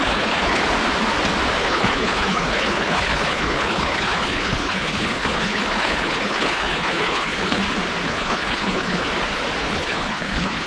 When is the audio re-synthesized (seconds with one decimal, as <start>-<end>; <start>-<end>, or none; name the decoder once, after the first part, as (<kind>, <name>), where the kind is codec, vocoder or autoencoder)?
0.0-0.6 (codec, HILCodec); 1.6-7.6; 8.1-9.1; 9.6-10.7